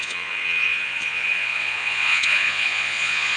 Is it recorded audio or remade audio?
remade